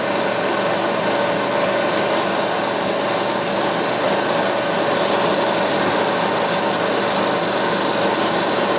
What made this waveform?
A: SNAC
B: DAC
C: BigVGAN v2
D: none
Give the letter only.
D